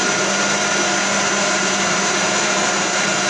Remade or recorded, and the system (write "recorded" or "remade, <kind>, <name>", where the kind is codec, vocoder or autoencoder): remade, vocoder, BigVGAN v2